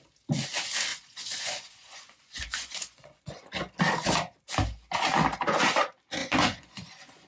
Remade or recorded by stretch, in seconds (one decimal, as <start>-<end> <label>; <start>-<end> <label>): 0.0-0.9 recorded; 0.9-3.5 remade; 3.5-6.2 recorded; 6.2-7.3 remade